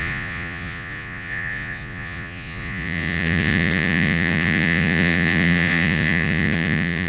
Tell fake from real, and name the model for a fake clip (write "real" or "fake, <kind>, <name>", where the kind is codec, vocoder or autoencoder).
fake, vocoder, Vocos